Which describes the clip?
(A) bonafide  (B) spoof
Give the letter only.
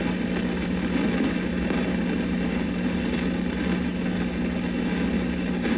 A